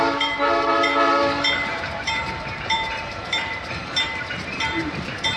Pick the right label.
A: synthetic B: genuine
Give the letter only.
A